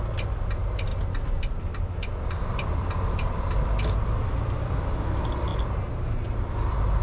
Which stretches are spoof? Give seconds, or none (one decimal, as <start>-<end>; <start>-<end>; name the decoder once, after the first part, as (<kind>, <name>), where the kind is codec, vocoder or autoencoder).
none